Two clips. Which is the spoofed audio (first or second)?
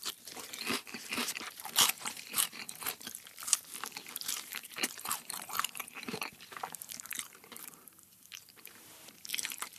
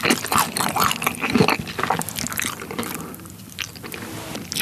first